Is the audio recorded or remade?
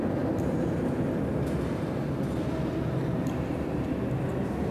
recorded